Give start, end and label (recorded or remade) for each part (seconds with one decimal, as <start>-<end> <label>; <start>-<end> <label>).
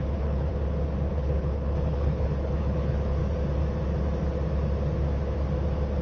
0.0-0.5 remade; 0.5-1.1 recorded; 1.1-3.2 remade; 3.2-6.0 recorded